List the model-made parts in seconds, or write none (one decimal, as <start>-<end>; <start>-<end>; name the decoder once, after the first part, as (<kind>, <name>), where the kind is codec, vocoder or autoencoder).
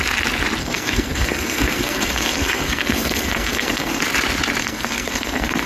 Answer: 0.6-4.0 (codec, SNAC); 4.6-5.7